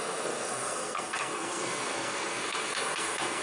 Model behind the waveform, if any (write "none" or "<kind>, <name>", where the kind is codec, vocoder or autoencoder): codec, SNAC